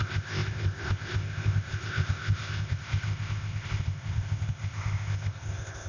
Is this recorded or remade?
remade